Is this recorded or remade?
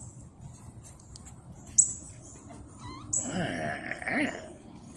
recorded